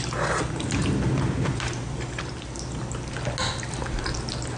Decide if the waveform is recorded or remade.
recorded